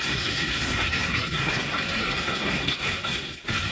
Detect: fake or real fake